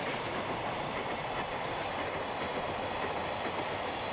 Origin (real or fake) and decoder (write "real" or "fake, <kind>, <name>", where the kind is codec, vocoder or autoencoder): real